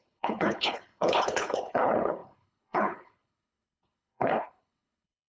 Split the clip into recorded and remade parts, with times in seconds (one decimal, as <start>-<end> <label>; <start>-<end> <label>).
0.0-5.3 remade